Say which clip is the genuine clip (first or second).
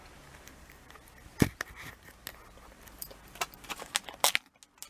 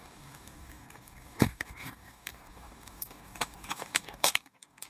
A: first